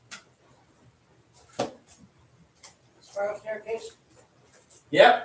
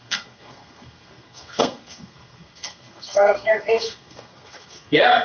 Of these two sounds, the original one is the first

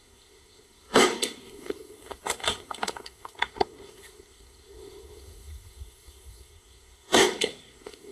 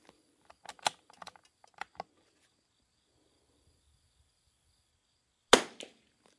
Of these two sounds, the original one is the second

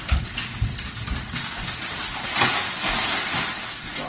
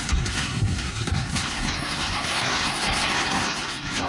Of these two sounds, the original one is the first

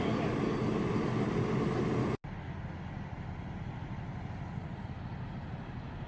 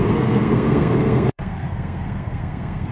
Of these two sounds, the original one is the first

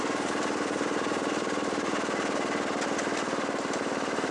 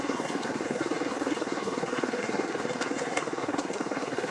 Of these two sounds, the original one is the first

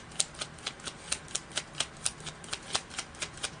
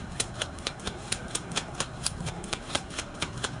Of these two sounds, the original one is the first